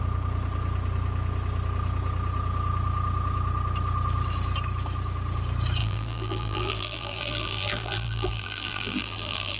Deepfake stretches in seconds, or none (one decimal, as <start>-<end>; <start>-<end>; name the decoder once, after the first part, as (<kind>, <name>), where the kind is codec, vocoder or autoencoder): 5.8-9.6 (vocoder, BigVGAN v2)